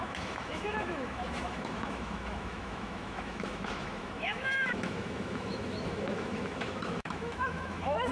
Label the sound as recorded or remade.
remade